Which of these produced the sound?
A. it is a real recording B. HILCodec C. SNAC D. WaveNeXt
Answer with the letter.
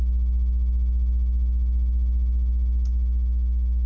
A